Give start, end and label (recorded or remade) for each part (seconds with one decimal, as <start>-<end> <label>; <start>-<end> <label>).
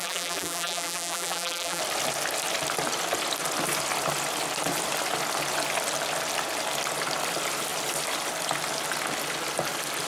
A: 0.0-1.8 remade; 1.8-10.1 recorded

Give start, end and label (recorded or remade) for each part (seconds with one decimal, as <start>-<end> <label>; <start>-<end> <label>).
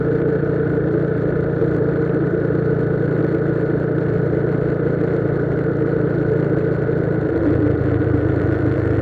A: 0.0-9.0 recorded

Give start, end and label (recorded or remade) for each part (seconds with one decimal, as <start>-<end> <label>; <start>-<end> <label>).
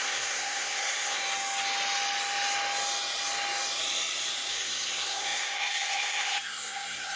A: 0.0-1.2 remade; 1.2-4.5 recorded; 4.5-7.2 remade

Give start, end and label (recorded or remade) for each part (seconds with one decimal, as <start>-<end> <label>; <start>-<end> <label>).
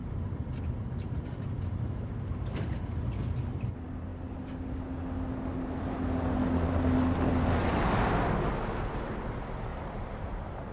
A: 0.0-2.7 remade; 2.7-9.7 recorded; 9.7-10.7 remade